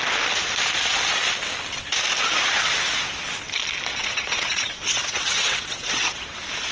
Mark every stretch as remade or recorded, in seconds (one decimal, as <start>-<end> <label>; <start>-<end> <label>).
0.0-3.9 recorded; 3.9-6.2 remade; 6.2-6.7 recorded